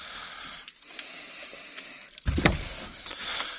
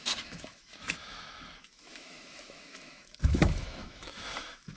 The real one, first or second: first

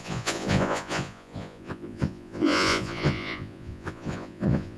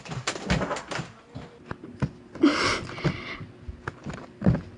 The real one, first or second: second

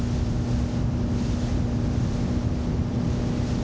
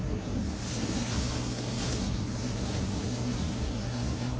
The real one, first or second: first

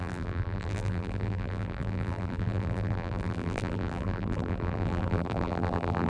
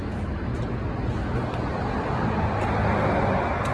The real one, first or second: second